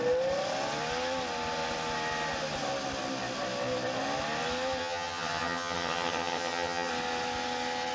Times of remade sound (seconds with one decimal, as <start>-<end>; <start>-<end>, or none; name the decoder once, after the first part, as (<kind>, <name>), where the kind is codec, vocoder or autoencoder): 4.8-6.9 (vocoder, HiFi-GAN)